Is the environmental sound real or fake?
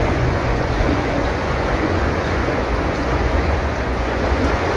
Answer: fake